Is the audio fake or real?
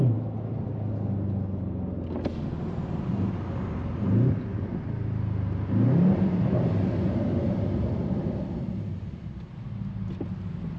real